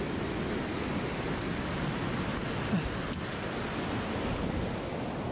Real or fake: real